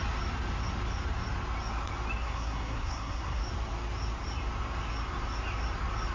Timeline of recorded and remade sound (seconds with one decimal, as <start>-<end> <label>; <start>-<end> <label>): 0.0-2.2 recorded; 2.2-3.4 remade; 3.4-6.1 recorded